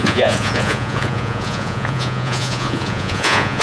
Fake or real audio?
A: fake